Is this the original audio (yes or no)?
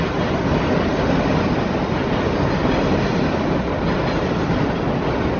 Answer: yes